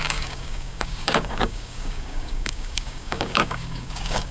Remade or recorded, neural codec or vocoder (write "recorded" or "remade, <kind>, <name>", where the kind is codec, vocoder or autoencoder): remade, codec, DAC